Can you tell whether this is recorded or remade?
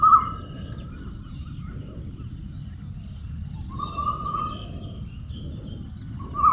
recorded